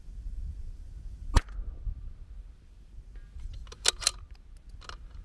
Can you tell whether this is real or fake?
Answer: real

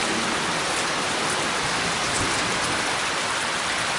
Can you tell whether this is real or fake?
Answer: real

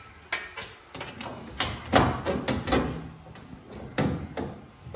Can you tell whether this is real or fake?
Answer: real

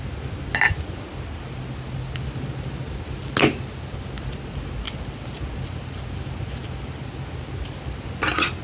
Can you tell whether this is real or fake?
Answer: real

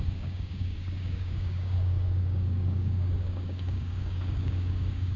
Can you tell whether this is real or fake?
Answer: fake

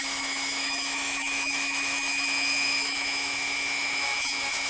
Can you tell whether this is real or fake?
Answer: fake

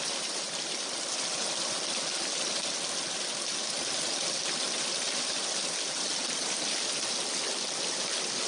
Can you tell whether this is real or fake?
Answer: real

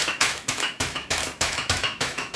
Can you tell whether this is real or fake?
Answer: fake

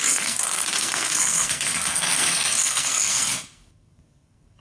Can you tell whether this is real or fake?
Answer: fake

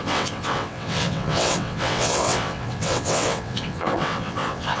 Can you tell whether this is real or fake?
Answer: fake